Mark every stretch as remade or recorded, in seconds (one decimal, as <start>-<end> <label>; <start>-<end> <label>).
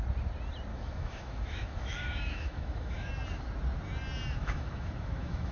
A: 0.0-0.7 recorded; 0.7-3.1 remade; 3.1-4.4 recorded; 4.4-5.5 remade